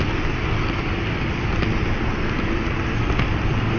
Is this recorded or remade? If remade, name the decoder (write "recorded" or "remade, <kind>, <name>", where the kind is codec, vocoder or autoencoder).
recorded